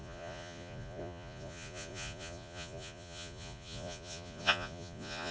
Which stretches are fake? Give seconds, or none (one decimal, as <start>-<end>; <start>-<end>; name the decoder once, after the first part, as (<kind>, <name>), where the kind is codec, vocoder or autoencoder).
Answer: 0.0-5.3 (vocoder, Vocos)

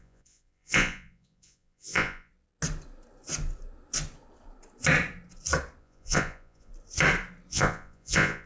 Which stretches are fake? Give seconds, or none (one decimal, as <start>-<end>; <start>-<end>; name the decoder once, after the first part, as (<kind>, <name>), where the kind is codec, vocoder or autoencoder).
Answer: 0.0-2.3 (vocoder, Vocos); 5.8-6.7; 7.5-8.5

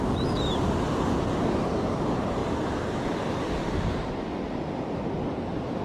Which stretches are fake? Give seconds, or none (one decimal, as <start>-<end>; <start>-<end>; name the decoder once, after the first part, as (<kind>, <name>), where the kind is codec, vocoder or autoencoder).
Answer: none

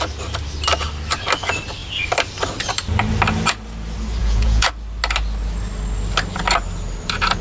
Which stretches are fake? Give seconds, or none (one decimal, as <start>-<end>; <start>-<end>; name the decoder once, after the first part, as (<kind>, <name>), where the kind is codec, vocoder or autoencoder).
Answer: 4.2-4.7 (vocoder, Vocos)

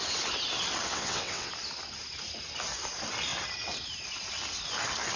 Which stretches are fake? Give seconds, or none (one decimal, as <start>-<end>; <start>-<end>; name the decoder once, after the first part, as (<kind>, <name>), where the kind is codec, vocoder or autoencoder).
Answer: 0.9-1.5 (vocoder, WaveNeXt)

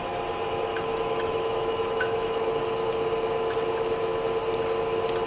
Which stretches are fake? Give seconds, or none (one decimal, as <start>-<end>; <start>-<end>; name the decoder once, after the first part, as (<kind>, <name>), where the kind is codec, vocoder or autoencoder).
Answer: 0.7-2.5 (autoencoder, DAC-VAE)

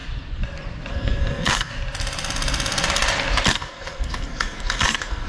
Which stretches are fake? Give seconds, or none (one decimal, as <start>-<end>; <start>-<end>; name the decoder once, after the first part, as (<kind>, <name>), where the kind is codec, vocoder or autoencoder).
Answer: 0.9-1.7 (codec, SNAC); 3.5-5.3

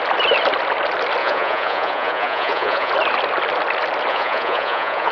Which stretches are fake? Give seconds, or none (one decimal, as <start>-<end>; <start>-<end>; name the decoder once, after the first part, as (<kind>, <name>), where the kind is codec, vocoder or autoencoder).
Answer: 1.2-2.9 (vocoder, Vocos); 4.1-5.1